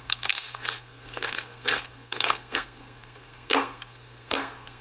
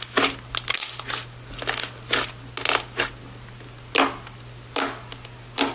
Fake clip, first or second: first